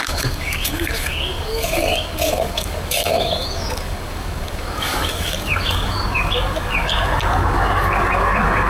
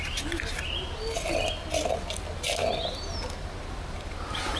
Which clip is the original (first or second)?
second